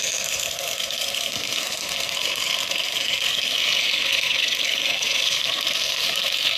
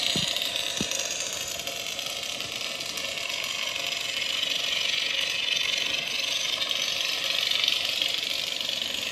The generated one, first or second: first